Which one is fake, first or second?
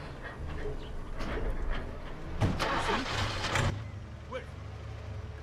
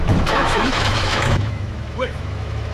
second